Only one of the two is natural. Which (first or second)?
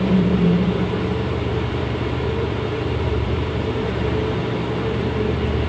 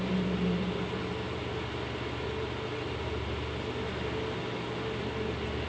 second